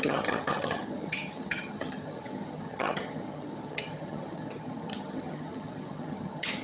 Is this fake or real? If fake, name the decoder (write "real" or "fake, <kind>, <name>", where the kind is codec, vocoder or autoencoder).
fake, vocoder, HiFi-GAN